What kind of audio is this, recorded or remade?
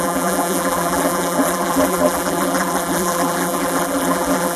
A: remade